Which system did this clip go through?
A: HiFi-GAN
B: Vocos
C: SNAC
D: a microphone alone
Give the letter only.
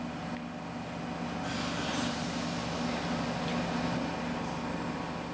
D